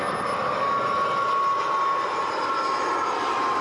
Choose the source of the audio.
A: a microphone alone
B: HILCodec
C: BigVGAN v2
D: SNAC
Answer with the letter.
A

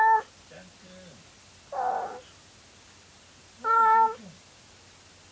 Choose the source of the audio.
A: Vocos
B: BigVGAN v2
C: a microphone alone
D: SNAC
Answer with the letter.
C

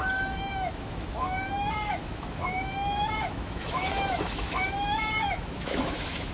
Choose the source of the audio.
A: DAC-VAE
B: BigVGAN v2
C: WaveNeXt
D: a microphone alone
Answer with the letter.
A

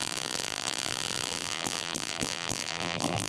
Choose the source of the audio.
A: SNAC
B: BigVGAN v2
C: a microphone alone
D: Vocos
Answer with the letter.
B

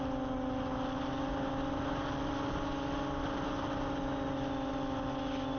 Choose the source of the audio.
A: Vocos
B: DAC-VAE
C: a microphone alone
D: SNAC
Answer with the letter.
C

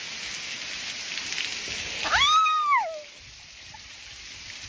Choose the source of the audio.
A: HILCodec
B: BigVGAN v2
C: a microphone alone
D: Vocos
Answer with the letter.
C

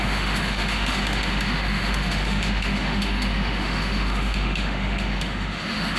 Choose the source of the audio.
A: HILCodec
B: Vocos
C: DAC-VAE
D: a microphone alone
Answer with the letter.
C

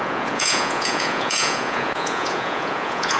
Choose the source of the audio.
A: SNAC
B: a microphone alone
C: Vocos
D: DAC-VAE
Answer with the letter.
C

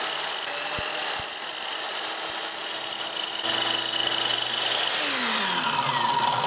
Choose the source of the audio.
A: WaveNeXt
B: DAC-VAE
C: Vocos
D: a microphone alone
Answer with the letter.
D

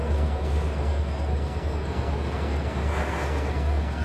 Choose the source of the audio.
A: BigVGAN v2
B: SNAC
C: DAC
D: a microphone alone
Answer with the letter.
B